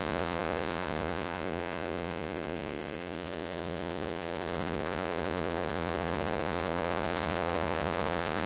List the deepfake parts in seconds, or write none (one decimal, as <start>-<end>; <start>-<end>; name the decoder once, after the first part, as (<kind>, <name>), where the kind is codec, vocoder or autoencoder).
0.0-8.5 (vocoder, Vocos)